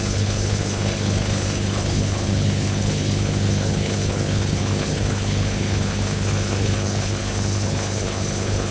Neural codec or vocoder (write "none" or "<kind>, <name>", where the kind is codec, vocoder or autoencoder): codec, HILCodec